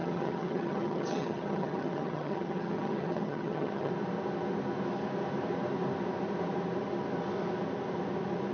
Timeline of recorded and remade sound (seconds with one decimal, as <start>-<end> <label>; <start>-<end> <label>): 0.0-3.9 remade; 3.9-8.5 recorded